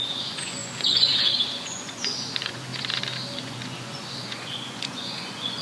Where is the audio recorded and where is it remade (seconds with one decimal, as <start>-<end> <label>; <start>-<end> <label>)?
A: 0.0-2.7 remade; 2.7-3.4 recorded; 3.4-5.6 remade